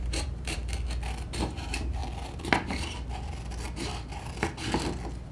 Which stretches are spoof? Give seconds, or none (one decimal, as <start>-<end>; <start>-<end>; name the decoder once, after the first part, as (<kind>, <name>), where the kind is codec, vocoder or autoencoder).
0.0-0.6 (vocoder, BigVGAN v2); 1.5-2.0